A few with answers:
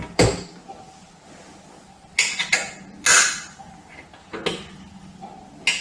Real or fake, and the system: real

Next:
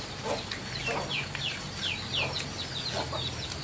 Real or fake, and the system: real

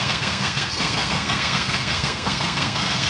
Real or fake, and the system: fake, codec, SNAC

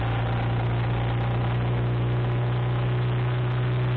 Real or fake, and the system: real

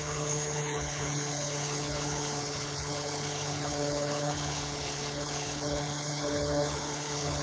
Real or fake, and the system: fake, codec, HILCodec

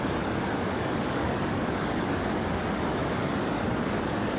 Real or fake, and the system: fake, codec, DAC